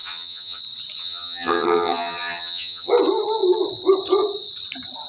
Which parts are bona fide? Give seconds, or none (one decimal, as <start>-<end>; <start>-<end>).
0.6-1.0; 2.9-5.1